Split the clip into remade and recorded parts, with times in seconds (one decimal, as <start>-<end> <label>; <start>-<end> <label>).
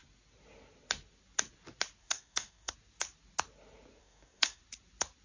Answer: 0.0-2.0 recorded; 2.0-2.7 remade; 2.7-4.0 recorded; 4.0-4.6 remade; 4.6-5.2 recorded